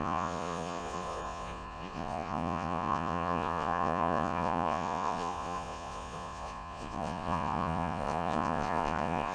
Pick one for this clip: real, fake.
fake